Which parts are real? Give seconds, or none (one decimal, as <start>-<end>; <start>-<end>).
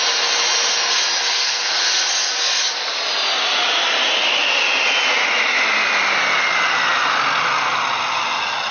0.0-1.2; 1.7-8.7